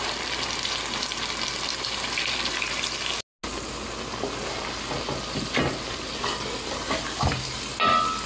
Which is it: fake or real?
real